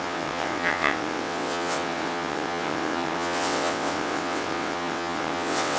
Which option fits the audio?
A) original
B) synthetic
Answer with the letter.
B